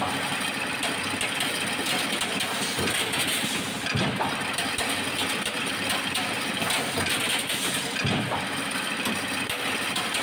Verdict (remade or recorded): recorded